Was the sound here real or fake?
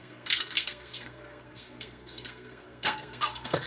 fake